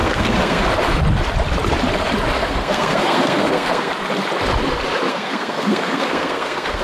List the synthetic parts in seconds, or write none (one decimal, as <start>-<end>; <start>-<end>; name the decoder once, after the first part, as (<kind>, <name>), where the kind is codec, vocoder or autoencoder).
0.0-0.6 (codec, SNAC); 2.4-3.9; 5.1-6.8